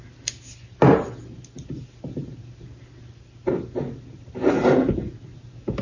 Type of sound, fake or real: real